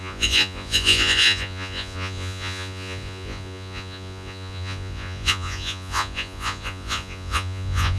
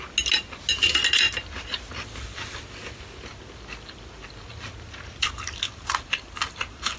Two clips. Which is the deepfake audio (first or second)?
first